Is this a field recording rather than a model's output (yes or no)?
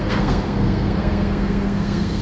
no